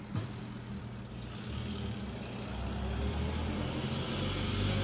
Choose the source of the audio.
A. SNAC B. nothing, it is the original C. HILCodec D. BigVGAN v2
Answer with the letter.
B